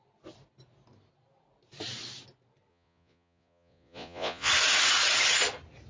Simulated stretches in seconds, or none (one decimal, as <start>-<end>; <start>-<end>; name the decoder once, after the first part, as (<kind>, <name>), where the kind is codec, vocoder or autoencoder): 2.7-4.5 (vocoder, Vocos)